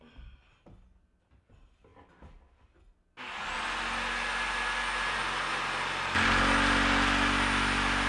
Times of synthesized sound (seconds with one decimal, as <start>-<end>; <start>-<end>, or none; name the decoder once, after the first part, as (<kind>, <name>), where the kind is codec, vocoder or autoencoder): none